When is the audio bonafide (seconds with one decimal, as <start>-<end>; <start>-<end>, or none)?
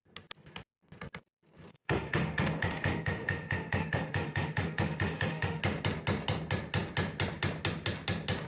0.0-1.7; 5.6-8.5